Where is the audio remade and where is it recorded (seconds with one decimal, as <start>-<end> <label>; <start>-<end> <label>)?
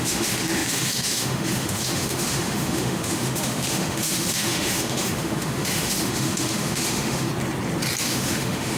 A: 0.0-7.3 remade; 7.3-8.0 recorded; 8.0-8.8 remade